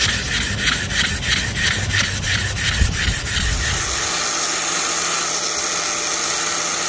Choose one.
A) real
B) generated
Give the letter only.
A